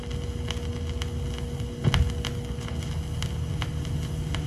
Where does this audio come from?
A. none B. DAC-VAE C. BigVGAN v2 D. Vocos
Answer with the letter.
A